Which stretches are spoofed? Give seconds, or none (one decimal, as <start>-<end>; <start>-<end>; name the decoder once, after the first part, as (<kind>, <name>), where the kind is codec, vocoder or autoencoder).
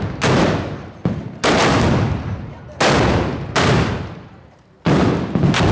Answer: none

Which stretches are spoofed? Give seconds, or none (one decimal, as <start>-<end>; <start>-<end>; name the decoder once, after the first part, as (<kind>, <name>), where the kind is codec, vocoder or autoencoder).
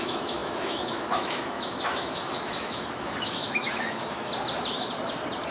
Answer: 0.0-4.3 (autoencoder, DAC-VAE)